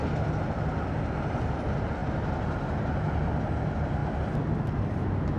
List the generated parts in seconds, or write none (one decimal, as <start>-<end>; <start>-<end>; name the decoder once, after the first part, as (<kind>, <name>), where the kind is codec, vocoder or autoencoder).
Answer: none